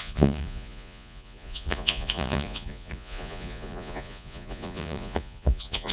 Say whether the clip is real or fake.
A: fake